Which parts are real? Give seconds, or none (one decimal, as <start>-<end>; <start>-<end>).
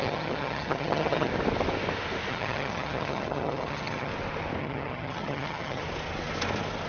1.3-2.3; 4.1-4.6; 5.8-6.9